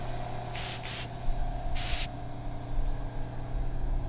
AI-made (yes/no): no